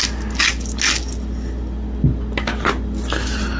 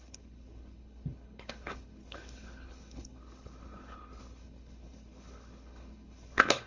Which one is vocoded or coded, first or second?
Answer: second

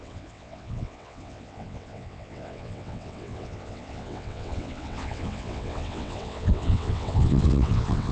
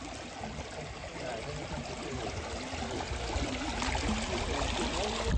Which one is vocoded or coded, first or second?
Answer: first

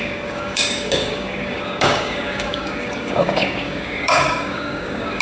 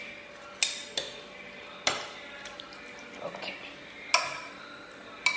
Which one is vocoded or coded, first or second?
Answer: first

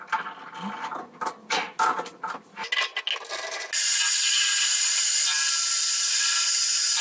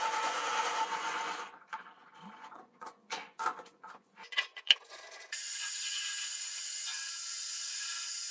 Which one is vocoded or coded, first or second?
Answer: second